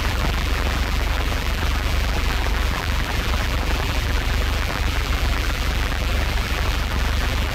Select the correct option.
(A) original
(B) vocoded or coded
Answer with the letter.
B